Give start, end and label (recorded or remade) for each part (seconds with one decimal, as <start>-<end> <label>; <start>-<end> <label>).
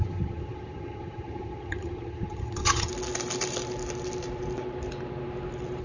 0.0-2.9 remade; 2.9-5.8 recorded